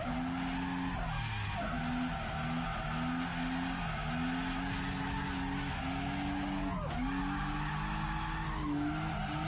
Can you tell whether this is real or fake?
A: real